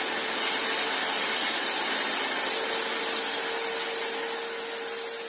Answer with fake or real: real